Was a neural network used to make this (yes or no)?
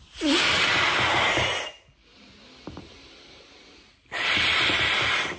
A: no